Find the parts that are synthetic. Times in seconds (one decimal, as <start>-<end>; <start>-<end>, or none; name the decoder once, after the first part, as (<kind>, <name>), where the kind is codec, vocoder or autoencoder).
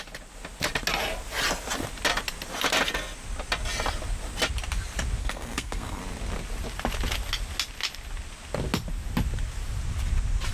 5.2-6.0 (codec, SNAC)